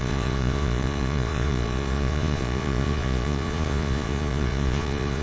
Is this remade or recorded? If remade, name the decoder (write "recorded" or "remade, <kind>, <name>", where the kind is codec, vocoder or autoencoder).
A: remade, vocoder, Vocos